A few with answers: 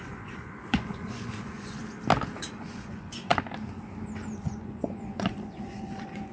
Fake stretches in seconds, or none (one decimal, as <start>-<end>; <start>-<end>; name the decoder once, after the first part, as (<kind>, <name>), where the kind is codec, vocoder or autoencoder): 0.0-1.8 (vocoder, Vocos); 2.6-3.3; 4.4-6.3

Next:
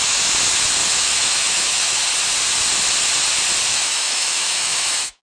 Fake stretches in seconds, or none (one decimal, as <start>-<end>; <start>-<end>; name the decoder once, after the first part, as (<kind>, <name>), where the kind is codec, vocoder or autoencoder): 0.8-2.0 (autoencoder, DAC-VAE); 3.7-5.2

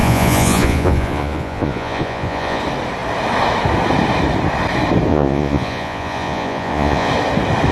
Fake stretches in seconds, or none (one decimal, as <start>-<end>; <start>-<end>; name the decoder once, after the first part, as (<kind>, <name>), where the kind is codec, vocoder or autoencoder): 0.0-2.6 (vocoder, Vocos); 5.1-7.1

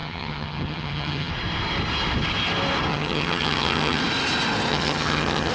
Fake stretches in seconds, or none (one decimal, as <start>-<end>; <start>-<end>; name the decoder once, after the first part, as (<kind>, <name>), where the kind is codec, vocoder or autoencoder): 0.0-1.3 (vocoder, HiFi-GAN); 2.9-4.0; 4.7-5.5

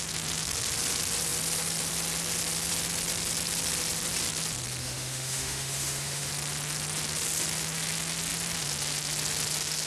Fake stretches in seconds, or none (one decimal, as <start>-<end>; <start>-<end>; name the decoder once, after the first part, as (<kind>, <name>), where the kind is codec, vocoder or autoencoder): 4.8-6.3 (autoencoder, DAC-VAE)

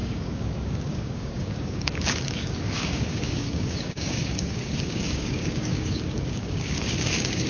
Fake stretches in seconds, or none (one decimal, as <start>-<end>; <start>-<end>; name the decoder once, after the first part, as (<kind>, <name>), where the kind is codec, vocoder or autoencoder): 0.0-7.5 (codec, DAC)

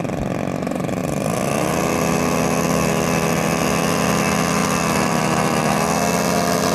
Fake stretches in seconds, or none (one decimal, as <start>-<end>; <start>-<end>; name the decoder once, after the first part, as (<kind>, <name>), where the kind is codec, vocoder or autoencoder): none